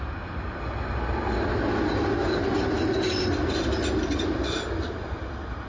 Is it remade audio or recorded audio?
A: recorded